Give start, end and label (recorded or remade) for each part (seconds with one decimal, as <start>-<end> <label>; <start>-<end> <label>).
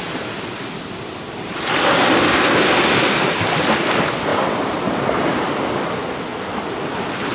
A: 0.0-4.3 recorded; 4.3-5.7 remade; 5.7-7.3 recorded